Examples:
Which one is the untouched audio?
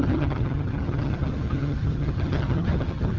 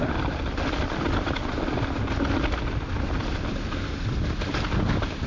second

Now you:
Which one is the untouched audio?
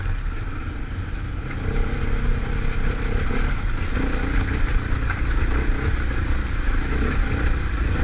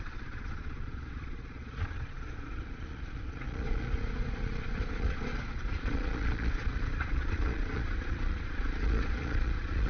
first